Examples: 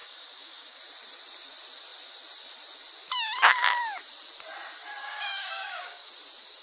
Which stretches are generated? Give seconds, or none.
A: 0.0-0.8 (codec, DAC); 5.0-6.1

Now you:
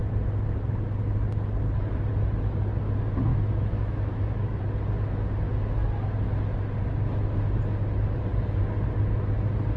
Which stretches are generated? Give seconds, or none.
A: 3.3-4.6 (autoencoder, DAC-VAE)

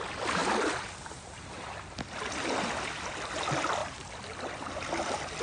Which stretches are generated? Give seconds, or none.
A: none

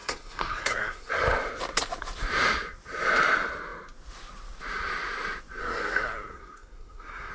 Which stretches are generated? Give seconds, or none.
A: 0.0-1.1 (codec, SNAC); 5.6-7.3

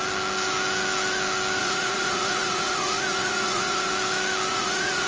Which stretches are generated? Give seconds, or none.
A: 1.6-3.9 (vocoder, Vocos); 4.5-5.1

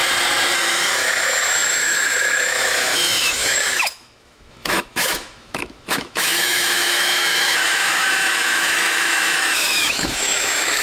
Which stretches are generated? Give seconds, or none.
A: 0.6-10.8 (autoencoder, DAC-VAE)